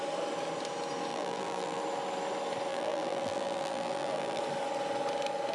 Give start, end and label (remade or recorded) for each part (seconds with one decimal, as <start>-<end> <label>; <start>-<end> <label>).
0.0-1.1 recorded; 1.1-1.8 remade; 1.8-2.7 recorded; 2.7-4.4 remade; 4.4-5.5 recorded

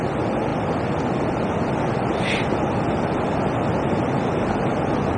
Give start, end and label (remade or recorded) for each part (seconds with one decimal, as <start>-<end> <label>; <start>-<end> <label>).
0.0-5.2 recorded

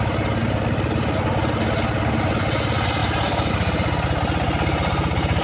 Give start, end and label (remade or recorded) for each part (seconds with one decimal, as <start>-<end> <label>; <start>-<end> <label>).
0.0-5.4 recorded

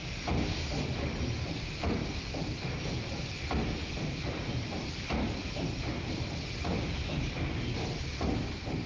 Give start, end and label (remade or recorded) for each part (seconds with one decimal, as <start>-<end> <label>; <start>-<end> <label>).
0.0-2.0 recorded; 2.0-6.6 remade; 6.6-8.9 recorded

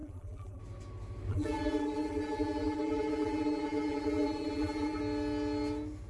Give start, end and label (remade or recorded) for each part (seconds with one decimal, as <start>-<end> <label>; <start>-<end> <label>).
0.0-0.6 remade; 0.6-1.3 recorded; 1.3-5.0 remade; 5.0-6.1 recorded

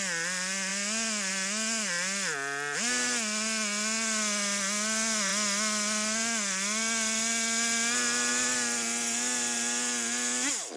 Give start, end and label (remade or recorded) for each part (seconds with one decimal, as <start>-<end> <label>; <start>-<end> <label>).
0.0-10.8 recorded